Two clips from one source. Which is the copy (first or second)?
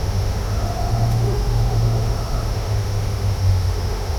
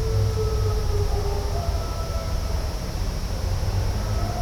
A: first